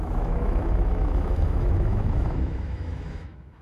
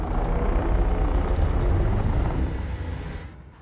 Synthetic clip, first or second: first